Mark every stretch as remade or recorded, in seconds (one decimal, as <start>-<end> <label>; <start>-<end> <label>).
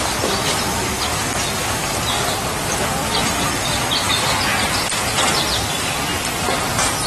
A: 0.0-7.1 recorded